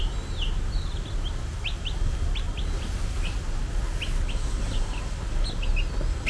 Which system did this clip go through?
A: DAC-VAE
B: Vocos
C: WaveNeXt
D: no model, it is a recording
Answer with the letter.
D